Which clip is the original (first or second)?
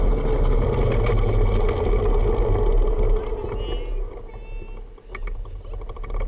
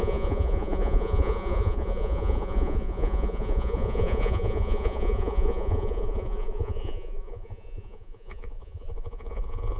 first